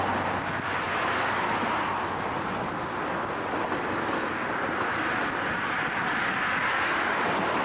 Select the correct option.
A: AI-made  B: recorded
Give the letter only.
B